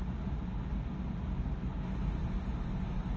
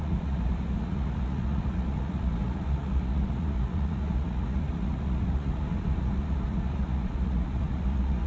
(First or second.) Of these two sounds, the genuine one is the first